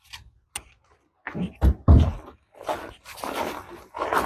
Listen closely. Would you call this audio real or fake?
real